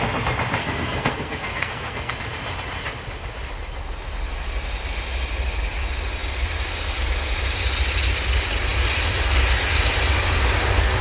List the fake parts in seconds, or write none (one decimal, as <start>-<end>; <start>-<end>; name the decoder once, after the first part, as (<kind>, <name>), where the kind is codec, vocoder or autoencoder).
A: 0.6-2.1 (codec, SNAC)

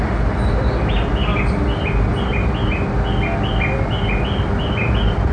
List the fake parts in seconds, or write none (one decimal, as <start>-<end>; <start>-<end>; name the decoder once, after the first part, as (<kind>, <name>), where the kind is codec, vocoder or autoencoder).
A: none

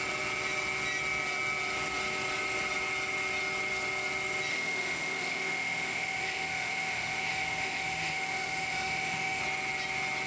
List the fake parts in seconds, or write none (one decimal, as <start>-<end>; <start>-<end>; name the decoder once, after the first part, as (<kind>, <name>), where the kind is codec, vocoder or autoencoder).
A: 4.5-9.4 (autoencoder, DAC-VAE)